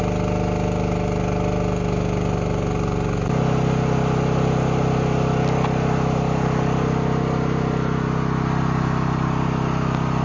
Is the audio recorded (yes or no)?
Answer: yes